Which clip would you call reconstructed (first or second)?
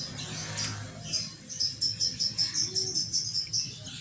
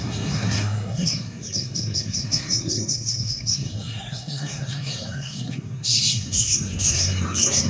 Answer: second